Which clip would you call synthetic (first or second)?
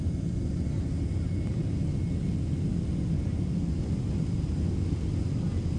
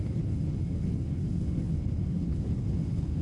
second